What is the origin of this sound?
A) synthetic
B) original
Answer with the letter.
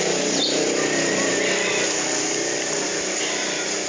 B